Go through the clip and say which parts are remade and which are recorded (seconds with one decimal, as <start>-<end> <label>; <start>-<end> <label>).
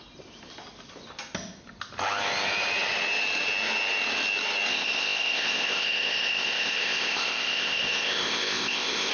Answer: 0.0-4.7 recorded; 4.7-9.1 remade